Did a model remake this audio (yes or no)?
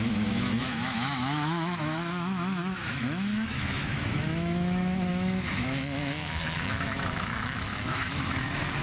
yes